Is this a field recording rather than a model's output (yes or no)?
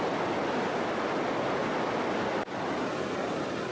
yes